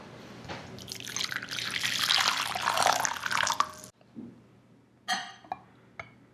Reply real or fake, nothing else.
real